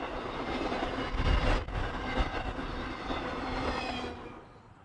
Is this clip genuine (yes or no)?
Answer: yes